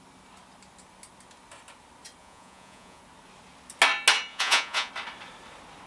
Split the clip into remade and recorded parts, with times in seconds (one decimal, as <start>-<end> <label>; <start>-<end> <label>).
0.0-2.2 recorded; 2.2-3.0 remade; 3.0-4.3 recorded; 4.3-4.9 remade; 4.9-5.9 recorded